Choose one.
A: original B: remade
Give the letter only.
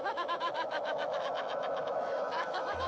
B